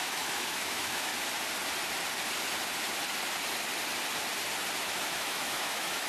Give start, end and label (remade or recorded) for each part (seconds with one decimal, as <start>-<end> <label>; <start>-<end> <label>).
0.0-1.1 remade; 1.1-4.8 recorded; 4.8-6.1 remade